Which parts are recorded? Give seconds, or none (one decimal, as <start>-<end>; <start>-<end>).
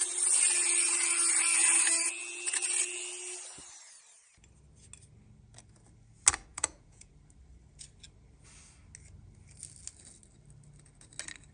0.0-6.5; 7.1-11.5